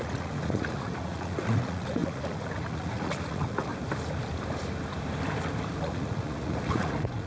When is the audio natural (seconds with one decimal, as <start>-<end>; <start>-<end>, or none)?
3.7-5.8

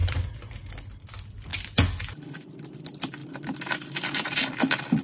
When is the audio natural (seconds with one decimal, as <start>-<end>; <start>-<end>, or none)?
0.0-5.0

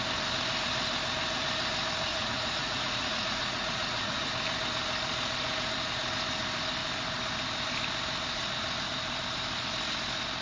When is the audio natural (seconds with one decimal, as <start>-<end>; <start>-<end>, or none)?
0.0-2.1; 4.3-10.4